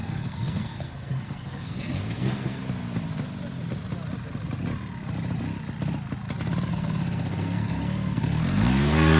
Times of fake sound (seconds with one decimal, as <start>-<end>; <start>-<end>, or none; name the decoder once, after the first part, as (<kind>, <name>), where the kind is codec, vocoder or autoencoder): 0.0-2.6 (codec, SNAC); 6.7-9.2

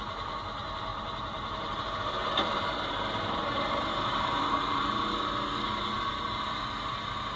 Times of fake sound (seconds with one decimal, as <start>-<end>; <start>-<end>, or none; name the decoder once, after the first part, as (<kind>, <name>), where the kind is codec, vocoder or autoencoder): 0.9-5.3 (vocoder, BigVGAN v2)